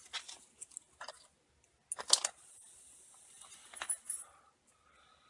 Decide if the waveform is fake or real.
real